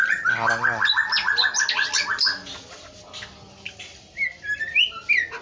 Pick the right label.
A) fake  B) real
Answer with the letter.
B